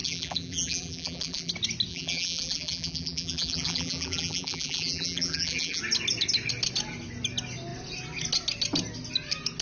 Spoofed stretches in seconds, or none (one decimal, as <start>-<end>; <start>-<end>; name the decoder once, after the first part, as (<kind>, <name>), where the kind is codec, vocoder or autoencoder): 0.0-1.5 (vocoder, BigVGAN v2); 1.9-5.8